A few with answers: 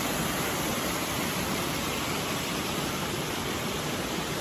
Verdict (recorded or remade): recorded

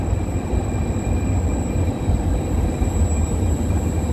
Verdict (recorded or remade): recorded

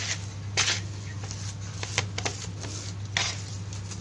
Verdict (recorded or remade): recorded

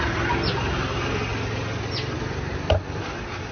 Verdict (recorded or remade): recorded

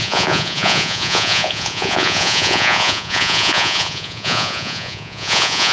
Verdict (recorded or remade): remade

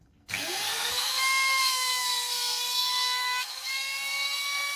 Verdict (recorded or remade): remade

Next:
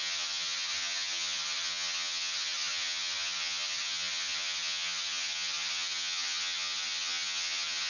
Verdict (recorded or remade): remade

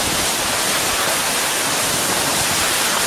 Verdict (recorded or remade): recorded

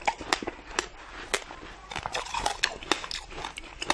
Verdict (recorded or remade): recorded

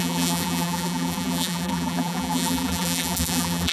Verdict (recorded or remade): remade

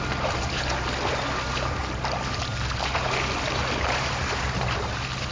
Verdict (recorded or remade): remade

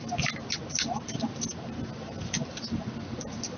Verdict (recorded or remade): recorded